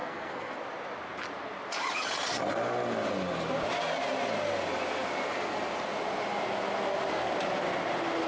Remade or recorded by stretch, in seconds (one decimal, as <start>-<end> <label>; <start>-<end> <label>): 0.0-0.6 remade; 0.6-8.3 recorded